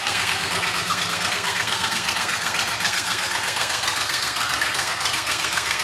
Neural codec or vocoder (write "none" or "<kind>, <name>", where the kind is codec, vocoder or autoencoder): codec, SNAC